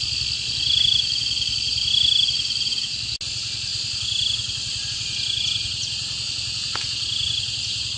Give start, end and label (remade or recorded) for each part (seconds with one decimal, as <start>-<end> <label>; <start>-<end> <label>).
0.0-8.0 recorded